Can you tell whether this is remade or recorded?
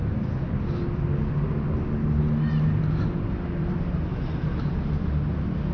recorded